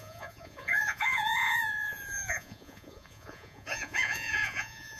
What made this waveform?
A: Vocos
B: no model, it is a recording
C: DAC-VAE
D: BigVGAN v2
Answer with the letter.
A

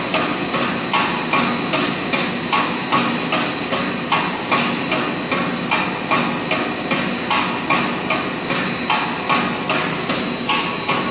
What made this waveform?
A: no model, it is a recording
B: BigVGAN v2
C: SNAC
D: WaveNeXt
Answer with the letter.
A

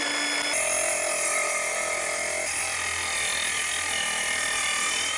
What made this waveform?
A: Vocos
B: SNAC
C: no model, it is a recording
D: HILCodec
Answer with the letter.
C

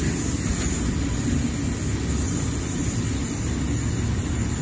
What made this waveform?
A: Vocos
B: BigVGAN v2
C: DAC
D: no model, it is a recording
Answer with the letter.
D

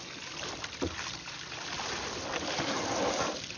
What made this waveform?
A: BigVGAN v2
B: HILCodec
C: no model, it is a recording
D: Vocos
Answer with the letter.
A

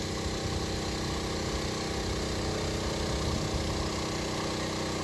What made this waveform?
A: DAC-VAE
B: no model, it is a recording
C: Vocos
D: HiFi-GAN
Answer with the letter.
B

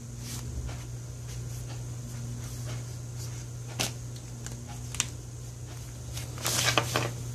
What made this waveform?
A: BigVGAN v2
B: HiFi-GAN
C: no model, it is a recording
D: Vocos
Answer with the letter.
C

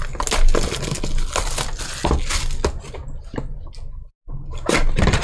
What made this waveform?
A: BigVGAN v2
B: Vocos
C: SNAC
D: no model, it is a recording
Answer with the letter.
D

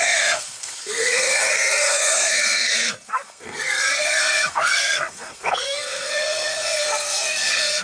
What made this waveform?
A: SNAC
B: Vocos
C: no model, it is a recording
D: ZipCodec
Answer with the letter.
A